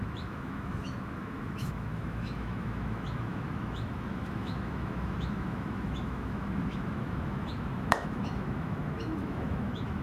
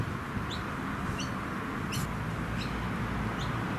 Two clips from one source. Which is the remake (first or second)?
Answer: first